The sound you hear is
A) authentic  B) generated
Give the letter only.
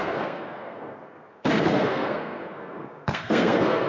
B